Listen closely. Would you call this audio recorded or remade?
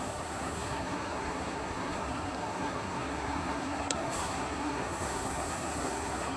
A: remade